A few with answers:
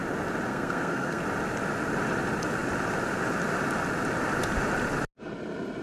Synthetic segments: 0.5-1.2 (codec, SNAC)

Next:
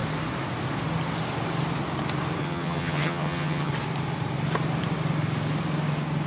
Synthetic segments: 2.4-3.7 (vocoder, HiFi-GAN)

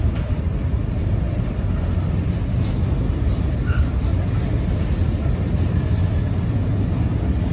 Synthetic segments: none

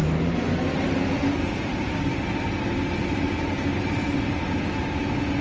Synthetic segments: none

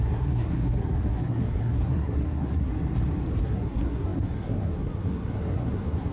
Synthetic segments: 0.0-2.7 (codec, SNAC); 3.4-6.1

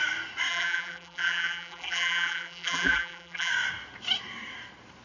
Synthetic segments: 0.5-3.5 (vocoder, BigVGAN v2)